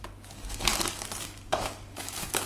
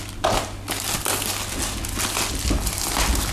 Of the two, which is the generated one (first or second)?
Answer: first